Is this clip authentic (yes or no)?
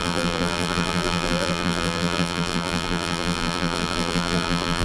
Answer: no